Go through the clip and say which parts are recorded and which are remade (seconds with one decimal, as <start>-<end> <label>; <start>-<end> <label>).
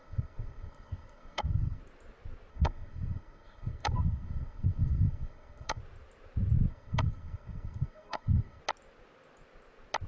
0.0-1.8 remade; 1.8-2.5 recorded; 2.5-5.8 remade; 5.8-6.7 recorded; 6.7-8.6 remade; 8.6-10.1 recorded